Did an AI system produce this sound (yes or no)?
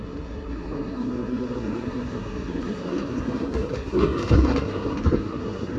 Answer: yes